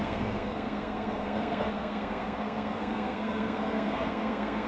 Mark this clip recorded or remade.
remade